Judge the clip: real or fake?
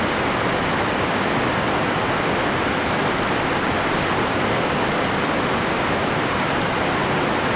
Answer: real